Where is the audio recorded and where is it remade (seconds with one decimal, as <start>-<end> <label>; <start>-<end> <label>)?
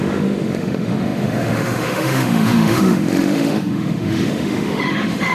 0.0-5.3 remade